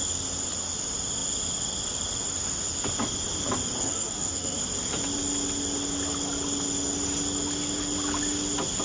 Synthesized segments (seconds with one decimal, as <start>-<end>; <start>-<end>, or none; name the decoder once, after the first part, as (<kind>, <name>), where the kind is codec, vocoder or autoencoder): 3.8-4.6 (codec, SNAC)